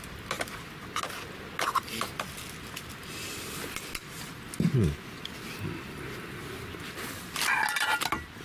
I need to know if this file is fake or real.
real